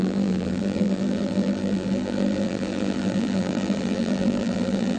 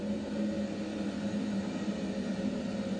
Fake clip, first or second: first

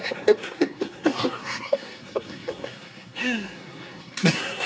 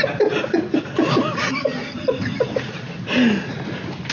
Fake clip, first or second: first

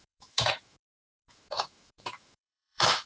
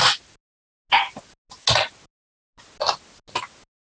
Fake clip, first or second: first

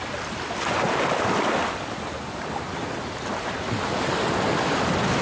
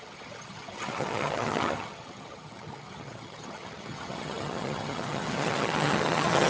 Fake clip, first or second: second